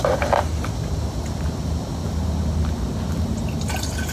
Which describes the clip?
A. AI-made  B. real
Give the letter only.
B